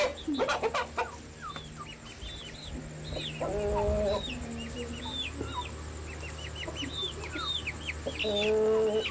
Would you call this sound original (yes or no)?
yes